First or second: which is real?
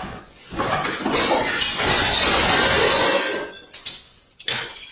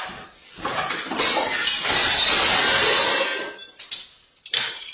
second